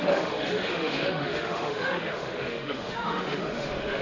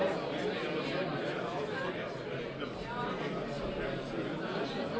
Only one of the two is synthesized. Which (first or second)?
first